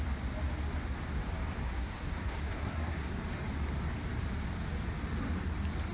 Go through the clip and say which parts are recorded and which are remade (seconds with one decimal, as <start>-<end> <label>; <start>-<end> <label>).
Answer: 0.0-1.6 recorded; 1.6-3.1 remade; 3.1-5.9 recorded